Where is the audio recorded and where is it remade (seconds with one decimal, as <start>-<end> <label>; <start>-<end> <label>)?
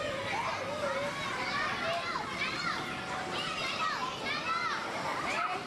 0.0-5.1 recorded; 5.1-5.7 remade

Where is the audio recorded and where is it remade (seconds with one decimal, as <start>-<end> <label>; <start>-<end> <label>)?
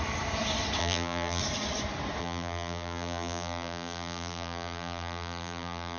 0.0-0.8 recorded; 0.8-1.4 remade; 1.4-2.2 recorded; 2.2-6.0 remade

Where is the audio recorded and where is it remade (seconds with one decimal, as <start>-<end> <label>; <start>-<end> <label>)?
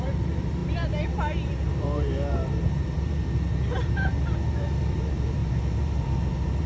0.0-6.7 remade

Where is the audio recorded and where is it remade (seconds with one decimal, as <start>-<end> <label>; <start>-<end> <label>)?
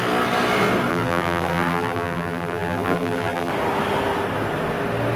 0.0-0.9 recorded; 0.9-3.5 remade; 3.5-5.2 recorded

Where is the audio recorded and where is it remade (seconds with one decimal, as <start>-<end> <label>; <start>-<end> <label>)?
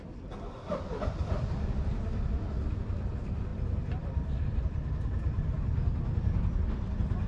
0.0-3.5 recorded; 3.5-4.6 remade; 4.6-7.3 recorded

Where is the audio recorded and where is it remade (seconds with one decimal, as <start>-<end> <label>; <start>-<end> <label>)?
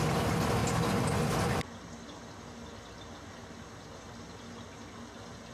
0.0-5.5 recorded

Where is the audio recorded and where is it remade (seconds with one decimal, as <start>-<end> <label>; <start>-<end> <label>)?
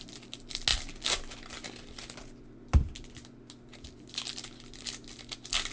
0.0-5.7 recorded